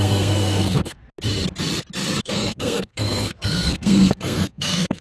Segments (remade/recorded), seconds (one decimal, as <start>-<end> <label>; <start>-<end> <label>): 0.0-1.0 remade; 1.0-2.2 recorded; 2.2-5.0 remade